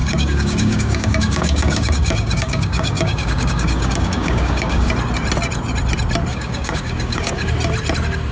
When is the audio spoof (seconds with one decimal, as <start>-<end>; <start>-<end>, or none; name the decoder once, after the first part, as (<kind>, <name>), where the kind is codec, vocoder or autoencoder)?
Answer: 0.0-4.9 (codec, DAC); 6.3-7.5